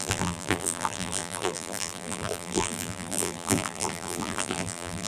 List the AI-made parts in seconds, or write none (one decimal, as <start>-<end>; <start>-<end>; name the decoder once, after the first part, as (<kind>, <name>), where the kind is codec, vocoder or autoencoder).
0.0-5.1 (vocoder, BigVGAN v2)